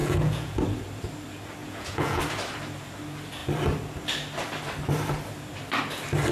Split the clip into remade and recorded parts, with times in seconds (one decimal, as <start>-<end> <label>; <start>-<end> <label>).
0.0-0.6 remade; 0.6-1.6 recorded; 1.6-2.2 remade; 2.2-6.3 recorded